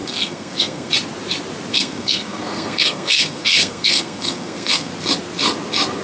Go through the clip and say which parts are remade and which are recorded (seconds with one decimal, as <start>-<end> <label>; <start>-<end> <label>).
0.0-0.9 remade; 0.9-1.7 recorded; 1.7-4.9 remade; 4.9-6.0 recorded